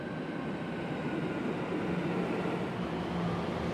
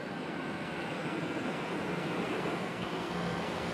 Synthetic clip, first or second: second